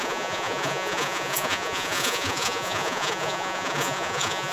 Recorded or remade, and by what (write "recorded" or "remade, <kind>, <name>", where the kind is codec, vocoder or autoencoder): remade, vocoder, Vocos